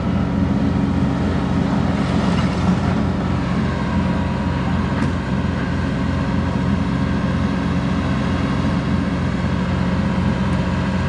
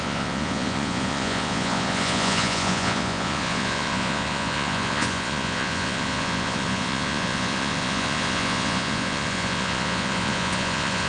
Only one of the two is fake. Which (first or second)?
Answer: second